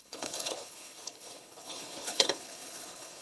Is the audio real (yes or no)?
no